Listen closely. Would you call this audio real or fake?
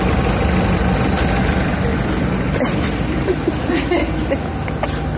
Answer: real